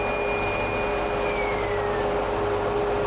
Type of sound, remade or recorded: recorded